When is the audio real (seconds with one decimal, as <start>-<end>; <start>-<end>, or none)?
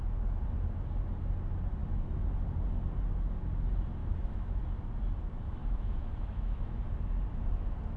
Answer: 0.0-4.0; 4.6-5.6; 6.8-8.0